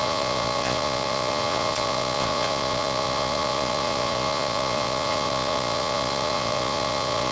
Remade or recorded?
remade